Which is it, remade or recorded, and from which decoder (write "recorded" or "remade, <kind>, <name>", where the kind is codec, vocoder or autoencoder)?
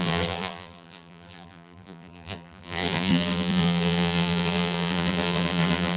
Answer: remade, vocoder, BigVGAN v2